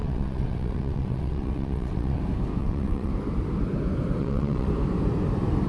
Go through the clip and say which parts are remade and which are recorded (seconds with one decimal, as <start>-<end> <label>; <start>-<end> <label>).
0.0-2.2 remade; 2.2-2.6 recorded; 2.6-3.1 remade; 3.1-4.2 recorded; 4.2-4.7 remade; 4.7-5.7 recorded